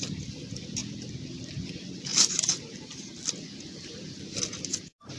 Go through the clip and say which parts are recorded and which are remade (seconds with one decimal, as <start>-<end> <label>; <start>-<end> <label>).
0.0-5.2 recorded